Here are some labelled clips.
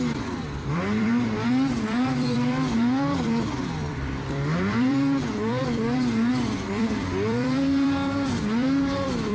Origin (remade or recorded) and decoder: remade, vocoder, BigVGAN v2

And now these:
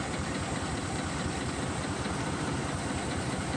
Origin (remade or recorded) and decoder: remade, vocoder, BigVGAN v2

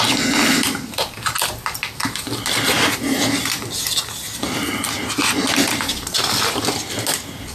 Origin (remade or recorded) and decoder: recorded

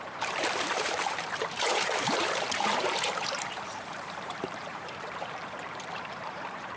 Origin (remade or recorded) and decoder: remade, vocoder, BigVGAN v2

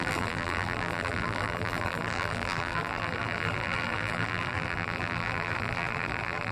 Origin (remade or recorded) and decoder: remade, vocoder, BigVGAN v2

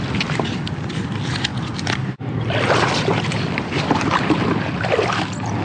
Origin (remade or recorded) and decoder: remade, vocoder, BigVGAN v2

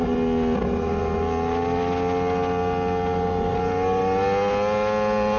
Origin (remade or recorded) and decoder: recorded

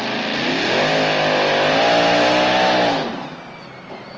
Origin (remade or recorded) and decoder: recorded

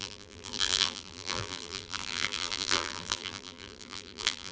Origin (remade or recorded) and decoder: remade, vocoder, BigVGAN v2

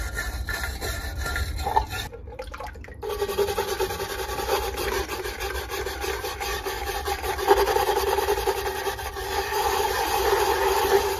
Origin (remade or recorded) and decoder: remade, vocoder, BigVGAN v2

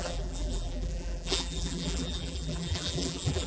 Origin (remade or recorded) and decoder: remade, vocoder, BigVGAN v2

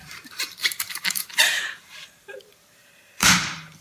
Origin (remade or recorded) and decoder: remade, vocoder, BigVGAN v2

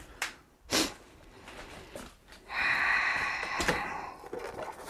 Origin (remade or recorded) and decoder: recorded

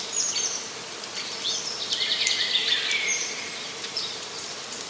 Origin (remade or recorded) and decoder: remade, vocoder, BigVGAN v2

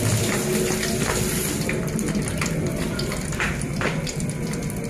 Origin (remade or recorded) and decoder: remade, vocoder, BigVGAN v2